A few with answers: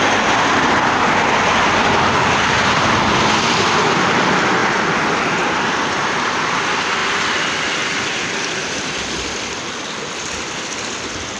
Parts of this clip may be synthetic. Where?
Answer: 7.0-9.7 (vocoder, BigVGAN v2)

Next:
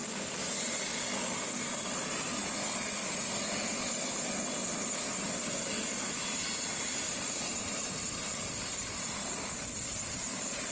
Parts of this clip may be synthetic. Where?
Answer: 2.0-2.4 (vocoder, BigVGAN v2); 7.0-9.2; 9.9-10.7

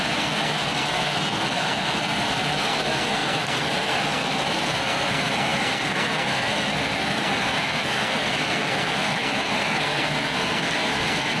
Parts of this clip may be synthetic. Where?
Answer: 0.0-11.4 (codec, SNAC)

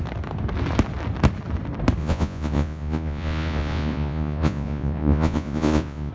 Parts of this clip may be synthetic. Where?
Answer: 2.0-6.1 (vocoder, Vocos)

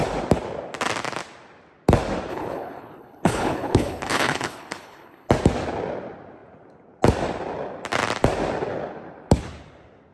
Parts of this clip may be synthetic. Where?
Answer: 2.3-5.3 (codec, HILCodec)

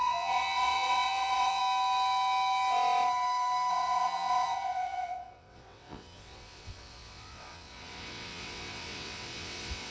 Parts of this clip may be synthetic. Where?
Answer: 0.0-1.6 (vocoder, WaveNeXt); 3.7-9.9

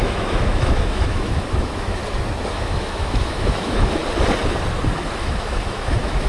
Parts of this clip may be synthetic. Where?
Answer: 0.0-2.0 (autoencoder, DAC-VAE); 2.5-4.0; 5.3-6.3